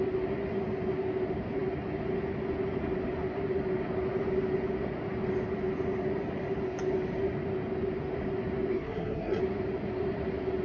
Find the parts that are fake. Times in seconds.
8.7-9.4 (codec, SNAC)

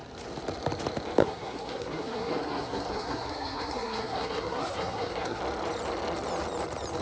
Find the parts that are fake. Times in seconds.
1.2-5.4 (codec, SNAC)

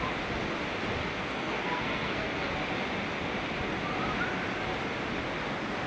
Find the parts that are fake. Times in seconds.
1.0-2.5 (codec, SNAC)

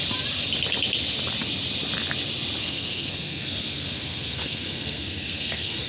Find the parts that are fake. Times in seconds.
2.6-5.9 (codec, SNAC)

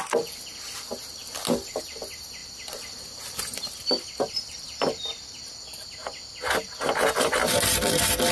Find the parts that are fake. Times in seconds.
none